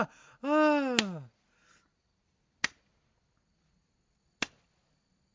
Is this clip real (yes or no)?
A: yes